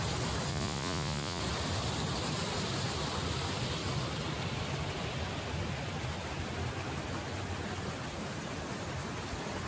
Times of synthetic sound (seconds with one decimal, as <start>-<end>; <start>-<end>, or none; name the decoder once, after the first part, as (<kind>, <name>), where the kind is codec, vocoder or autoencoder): 0.5-1.4 (vocoder, Vocos)